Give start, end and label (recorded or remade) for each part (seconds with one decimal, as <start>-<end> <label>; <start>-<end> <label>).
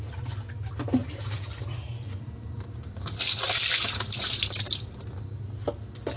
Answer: 0.0-1.0 recorded; 1.0-4.4 remade; 4.4-6.2 recorded